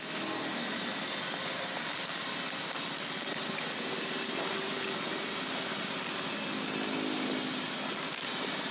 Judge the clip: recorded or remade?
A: recorded